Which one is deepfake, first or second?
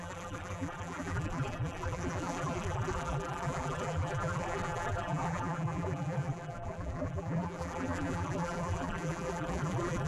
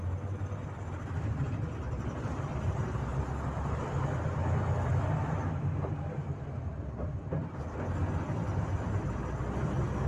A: first